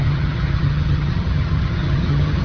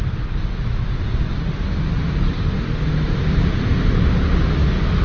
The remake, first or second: first